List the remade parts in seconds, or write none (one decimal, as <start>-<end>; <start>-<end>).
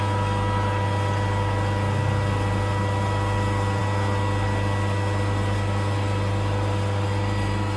none